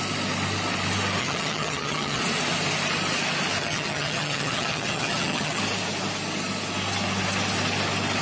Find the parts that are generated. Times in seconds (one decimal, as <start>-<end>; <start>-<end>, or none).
1.2-2.2; 3.6-5.6